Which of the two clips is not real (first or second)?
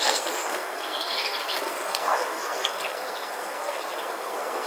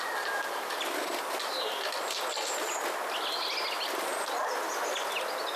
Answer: first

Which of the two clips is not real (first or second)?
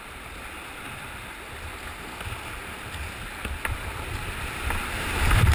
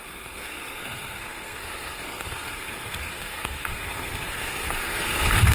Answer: second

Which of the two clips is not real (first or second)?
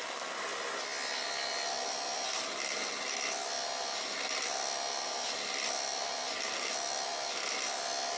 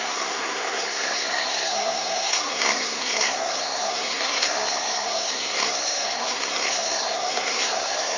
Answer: second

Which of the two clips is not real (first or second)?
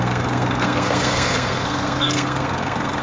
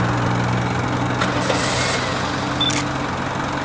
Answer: first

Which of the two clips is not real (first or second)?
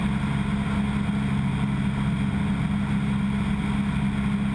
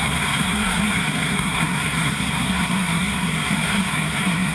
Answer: second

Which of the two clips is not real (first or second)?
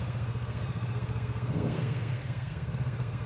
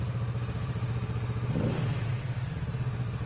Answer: first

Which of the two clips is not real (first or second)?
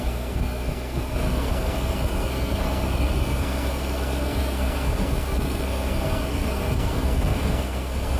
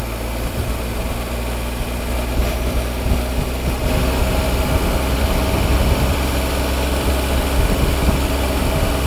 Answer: first